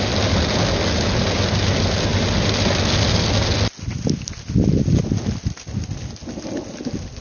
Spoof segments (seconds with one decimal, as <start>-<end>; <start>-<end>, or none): none